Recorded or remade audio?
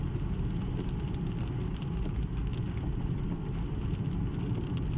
recorded